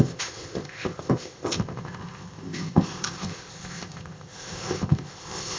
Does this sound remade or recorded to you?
remade